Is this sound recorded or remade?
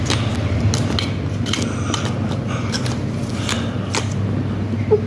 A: recorded